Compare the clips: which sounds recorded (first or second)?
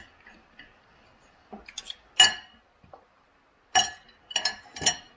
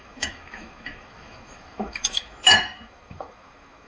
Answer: first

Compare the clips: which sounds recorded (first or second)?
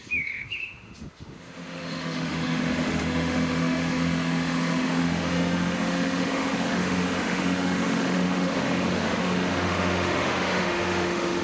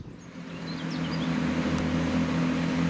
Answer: second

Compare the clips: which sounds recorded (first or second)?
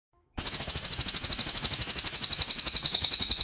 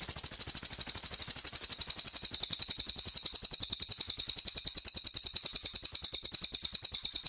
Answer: second